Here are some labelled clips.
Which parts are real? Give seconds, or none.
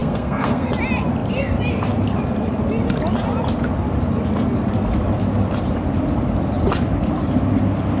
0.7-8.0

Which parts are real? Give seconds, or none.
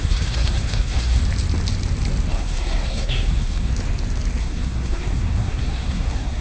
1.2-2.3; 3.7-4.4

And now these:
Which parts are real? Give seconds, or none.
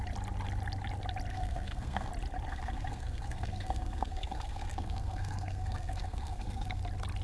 0.0-1.3; 2.1-2.5; 6.8-7.2